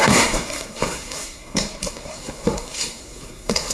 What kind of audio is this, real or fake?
fake